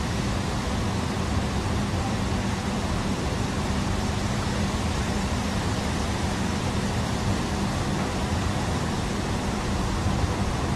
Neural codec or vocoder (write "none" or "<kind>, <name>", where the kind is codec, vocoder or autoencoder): vocoder, BigVGAN v2